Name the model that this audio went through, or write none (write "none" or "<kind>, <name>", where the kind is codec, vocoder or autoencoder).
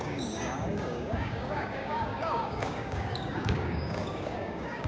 codec, DAC